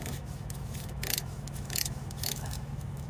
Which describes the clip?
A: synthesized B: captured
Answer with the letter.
A